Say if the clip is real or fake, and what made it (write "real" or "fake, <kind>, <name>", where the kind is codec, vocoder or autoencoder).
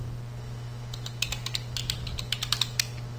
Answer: real